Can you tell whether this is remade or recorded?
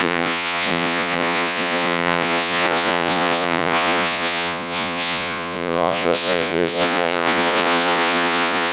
remade